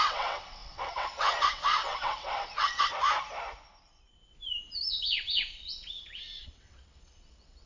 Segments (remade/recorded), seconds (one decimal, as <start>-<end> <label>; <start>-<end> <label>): 0.0-2.9 remade; 2.9-4.9 recorded; 4.9-7.7 remade